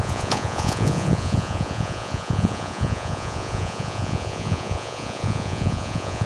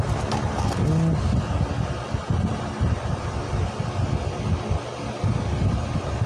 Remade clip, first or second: first